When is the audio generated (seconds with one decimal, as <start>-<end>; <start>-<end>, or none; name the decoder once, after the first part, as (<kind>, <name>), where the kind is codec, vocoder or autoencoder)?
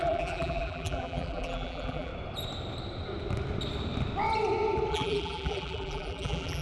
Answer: 0.0-2.1 (vocoder, BigVGAN v2); 4.9-6.6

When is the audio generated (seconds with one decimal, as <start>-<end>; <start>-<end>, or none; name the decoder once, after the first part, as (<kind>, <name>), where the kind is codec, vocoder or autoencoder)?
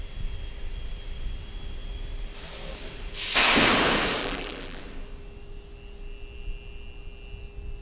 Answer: 4.2-4.8 (vocoder, BigVGAN v2)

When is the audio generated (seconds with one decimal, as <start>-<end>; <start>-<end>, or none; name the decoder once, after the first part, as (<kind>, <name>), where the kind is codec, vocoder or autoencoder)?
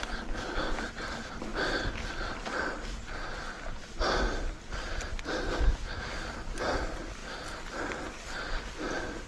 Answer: 0.0-1.5 (vocoder, BigVGAN v2); 6.6-7.2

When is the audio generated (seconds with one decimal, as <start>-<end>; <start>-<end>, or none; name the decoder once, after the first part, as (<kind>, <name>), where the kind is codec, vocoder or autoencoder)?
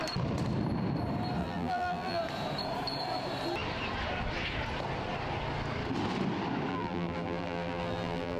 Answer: 1.4-2.2 (vocoder, BigVGAN v2); 6.7-8.4